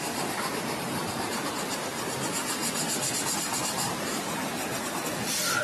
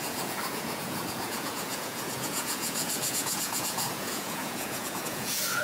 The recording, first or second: first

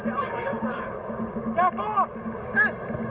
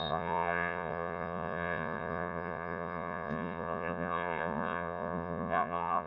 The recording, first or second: first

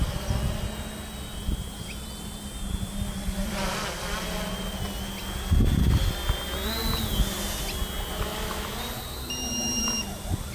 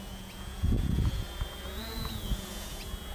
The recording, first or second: first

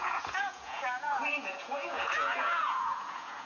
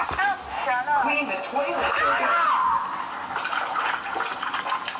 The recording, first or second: second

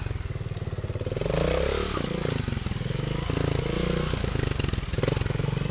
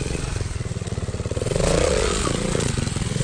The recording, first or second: first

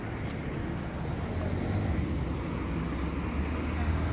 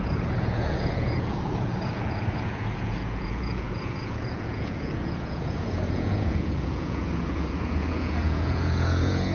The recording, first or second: first